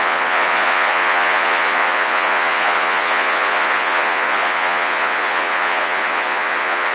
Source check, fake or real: fake